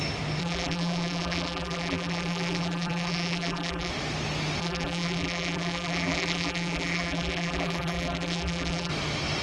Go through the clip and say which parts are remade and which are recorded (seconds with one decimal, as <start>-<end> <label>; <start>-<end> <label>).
0.0-0.4 recorded; 0.4-3.9 remade; 3.9-4.6 recorded; 4.6-8.9 remade; 8.9-9.4 recorded